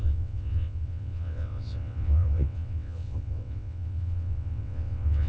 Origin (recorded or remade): remade